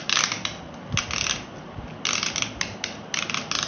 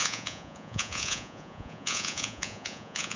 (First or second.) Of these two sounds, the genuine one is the first